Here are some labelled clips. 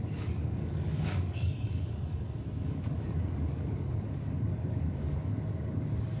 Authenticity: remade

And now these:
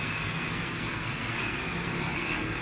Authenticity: remade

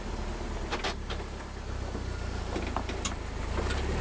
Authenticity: recorded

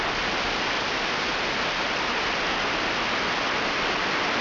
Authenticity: recorded